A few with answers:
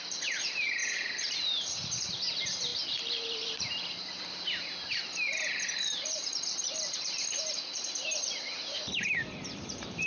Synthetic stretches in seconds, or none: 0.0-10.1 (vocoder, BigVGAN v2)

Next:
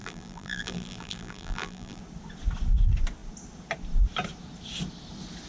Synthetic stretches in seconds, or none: 0.0-2.0 (vocoder, BigVGAN v2)